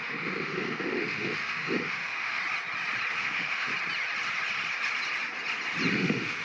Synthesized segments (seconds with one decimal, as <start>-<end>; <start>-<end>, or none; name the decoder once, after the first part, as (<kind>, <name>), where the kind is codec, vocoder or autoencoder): 0.0-2.4 (autoencoder, DAC-VAE); 3.1-3.7; 5.9-6.4